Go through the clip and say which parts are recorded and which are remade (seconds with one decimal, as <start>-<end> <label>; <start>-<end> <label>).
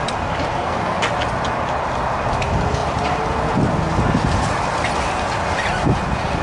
0.0-0.5 recorded; 0.5-1.0 remade; 1.0-6.4 recorded